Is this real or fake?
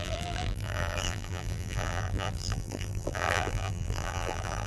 fake